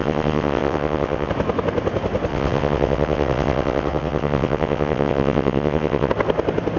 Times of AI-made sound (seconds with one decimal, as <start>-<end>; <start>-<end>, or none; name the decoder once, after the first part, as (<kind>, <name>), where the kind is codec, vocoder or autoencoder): 0.0-1.3 (vocoder, WaveNeXt); 2.3-6.1